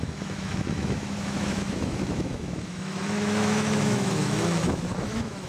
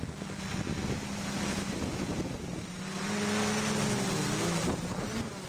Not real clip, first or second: first